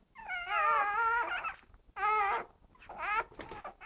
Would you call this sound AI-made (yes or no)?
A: no